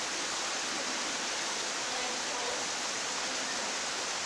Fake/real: real